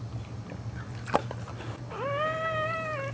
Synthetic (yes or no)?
no